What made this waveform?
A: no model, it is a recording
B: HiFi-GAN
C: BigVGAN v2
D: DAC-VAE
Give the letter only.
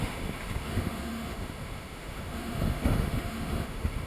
D